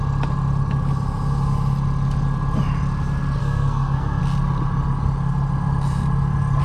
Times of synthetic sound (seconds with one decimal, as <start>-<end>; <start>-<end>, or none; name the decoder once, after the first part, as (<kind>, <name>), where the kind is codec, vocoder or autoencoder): 3.4-4.2 (codec, SNAC)